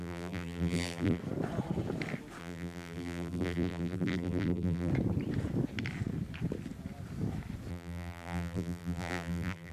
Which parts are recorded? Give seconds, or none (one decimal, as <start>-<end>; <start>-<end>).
1.2-2.4; 4.9-7.7